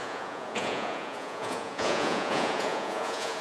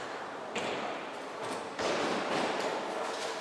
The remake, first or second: first